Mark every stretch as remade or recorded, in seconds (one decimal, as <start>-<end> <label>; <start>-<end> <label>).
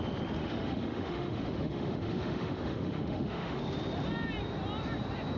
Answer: 0.0-0.4 recorded; 0.4-3.6 remade; 3.6-5.4 recorded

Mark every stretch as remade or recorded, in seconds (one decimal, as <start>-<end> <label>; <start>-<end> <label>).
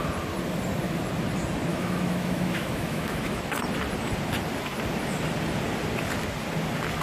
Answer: 0.0-1.7 recorded; 1.7-3.4 remade; 3.4-7.0 recorded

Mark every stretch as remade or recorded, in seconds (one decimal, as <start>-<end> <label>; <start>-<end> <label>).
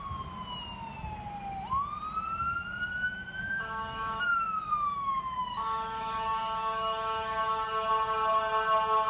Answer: 0.0-2.9 recorded; 2.9-7.9 remade; 7.9-9.1 recorded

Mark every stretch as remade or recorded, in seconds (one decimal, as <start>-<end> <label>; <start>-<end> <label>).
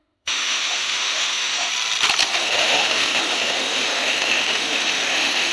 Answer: 0.0-1.7 remade; 1.7-2.4 recorded; 2.4-5.5 remade